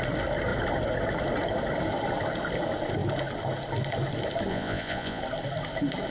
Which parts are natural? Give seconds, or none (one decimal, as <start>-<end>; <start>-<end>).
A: 0.0-4.5; 5.2-6.1

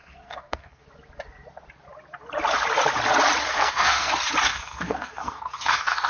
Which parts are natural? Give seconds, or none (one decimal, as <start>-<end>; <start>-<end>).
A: 0.8-3.5; 4.1-4.5